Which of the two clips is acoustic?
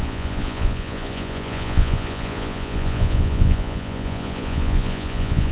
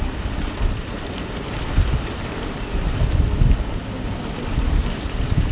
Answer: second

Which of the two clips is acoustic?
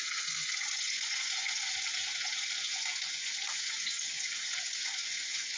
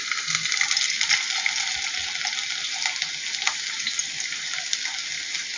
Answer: second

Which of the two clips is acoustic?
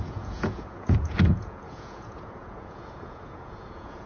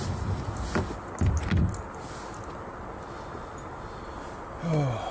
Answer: second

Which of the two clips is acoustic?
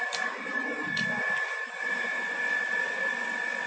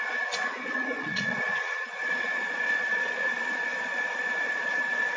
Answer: first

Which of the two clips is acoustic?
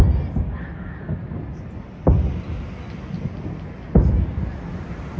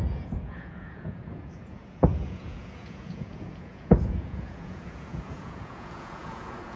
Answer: first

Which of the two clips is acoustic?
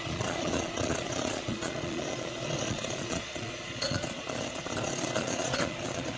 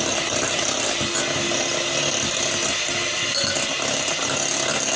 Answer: second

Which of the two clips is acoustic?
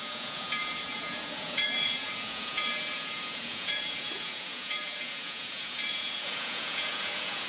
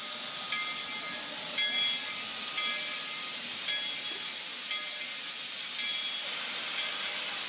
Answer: second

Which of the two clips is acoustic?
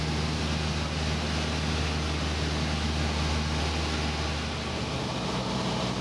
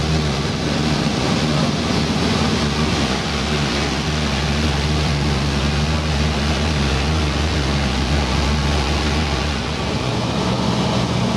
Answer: first